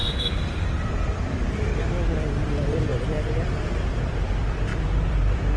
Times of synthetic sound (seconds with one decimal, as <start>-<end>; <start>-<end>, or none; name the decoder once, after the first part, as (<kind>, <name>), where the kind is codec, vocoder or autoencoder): 0.0-5.6 (vocoder, BigVGAN v2)